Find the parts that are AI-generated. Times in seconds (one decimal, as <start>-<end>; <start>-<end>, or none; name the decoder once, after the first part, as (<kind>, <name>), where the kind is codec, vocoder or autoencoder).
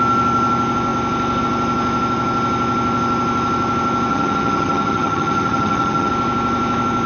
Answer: 4.1-6.1 (vocoder, HiFi-GAN)